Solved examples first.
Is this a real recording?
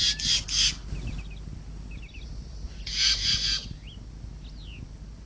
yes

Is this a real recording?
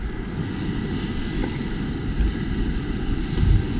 yes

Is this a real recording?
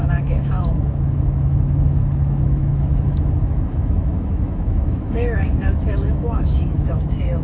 no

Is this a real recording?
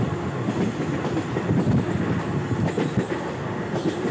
yes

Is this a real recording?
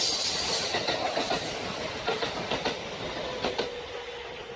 yes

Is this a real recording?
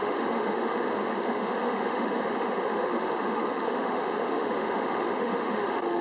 no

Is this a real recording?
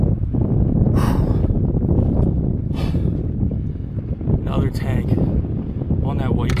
yes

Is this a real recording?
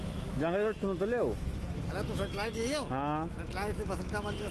no